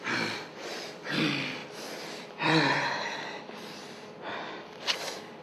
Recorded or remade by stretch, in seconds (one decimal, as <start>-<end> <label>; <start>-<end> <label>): 0.0-5.4 remade